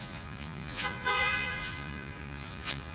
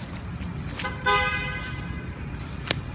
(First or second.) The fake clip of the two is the first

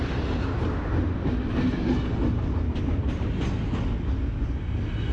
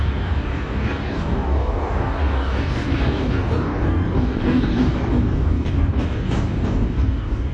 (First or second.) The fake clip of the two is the second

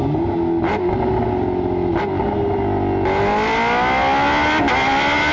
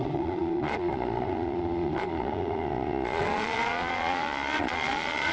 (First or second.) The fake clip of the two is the second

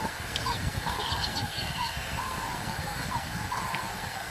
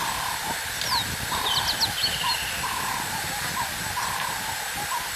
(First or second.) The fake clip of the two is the first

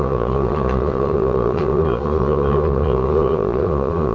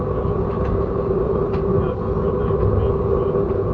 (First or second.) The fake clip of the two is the first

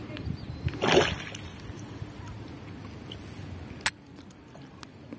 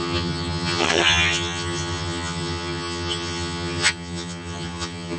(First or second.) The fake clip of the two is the second